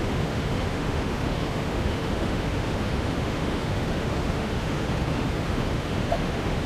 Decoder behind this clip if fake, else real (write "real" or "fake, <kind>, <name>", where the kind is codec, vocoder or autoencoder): fake, autoencoder, DAC-VAE